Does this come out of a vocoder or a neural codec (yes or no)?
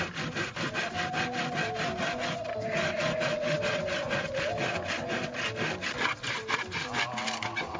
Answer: no